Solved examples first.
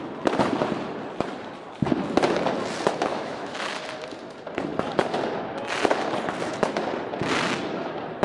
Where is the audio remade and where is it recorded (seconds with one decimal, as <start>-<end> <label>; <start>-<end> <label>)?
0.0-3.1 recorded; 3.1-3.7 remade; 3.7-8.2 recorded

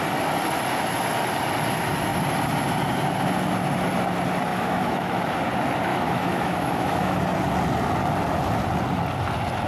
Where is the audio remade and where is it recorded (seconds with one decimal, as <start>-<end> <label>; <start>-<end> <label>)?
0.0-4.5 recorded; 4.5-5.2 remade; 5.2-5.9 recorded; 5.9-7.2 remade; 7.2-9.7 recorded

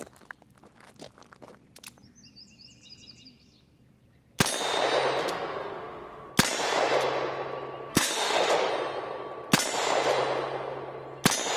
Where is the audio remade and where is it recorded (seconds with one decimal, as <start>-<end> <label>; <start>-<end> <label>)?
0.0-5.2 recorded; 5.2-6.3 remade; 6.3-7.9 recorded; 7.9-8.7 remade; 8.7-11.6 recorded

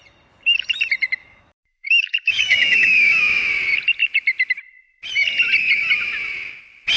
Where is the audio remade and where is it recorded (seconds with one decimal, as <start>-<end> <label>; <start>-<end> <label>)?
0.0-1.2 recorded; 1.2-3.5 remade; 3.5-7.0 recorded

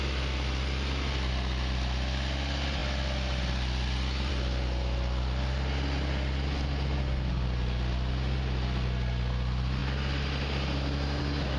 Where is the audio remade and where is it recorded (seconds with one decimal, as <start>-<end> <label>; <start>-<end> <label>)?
0.0-11.6 recorded

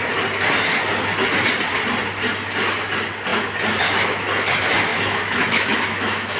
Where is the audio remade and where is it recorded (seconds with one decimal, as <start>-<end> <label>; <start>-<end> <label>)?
0.0-4.9 recorded; 4.9-6.4 remade

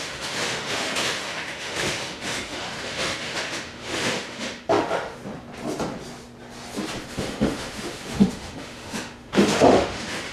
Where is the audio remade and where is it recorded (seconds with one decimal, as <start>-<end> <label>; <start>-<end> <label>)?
0.0-5.2 remade; 5.2-7.1 recorded; 7.1-10.3 remade

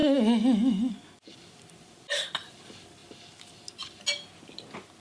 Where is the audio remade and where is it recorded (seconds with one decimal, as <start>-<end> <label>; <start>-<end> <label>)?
0.0-0.9 remade; 0.9-5.0 recorded